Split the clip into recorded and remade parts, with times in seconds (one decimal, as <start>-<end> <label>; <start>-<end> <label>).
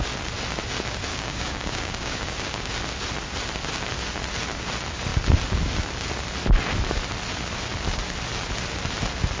0.0-1.1 recorded; 1.1-2.7 remade; 2.7-9.4 recorded